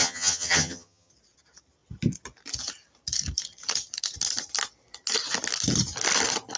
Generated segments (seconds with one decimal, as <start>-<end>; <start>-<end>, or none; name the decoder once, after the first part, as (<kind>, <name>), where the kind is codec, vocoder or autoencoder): 0.0-1.1 (vocoder, HiFi-GAN)